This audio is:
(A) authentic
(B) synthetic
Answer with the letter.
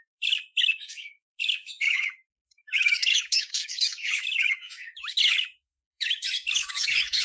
B